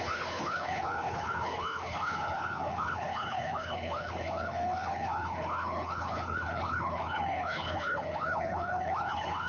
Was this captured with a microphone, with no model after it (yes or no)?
no